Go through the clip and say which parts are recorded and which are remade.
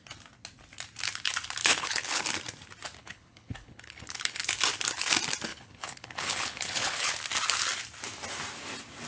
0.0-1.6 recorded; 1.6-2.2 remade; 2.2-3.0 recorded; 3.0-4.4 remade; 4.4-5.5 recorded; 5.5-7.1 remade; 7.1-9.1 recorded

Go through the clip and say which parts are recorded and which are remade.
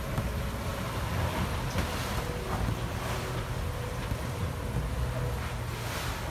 0.0-6.3 recorded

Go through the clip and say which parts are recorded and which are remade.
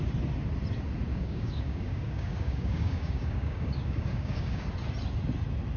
0.0-1.1 recorded; 1.1-4.6 remade; 4.6-5.8 recorded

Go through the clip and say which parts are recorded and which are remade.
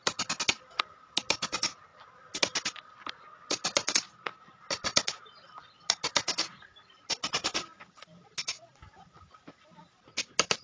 0.0-10.6 recorded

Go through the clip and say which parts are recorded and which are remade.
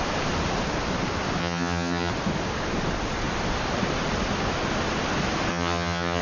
0.0-1.4 recorded; 1.4-2.1 remade; 2.1-5.5 recorded; 5.5-6.2 remade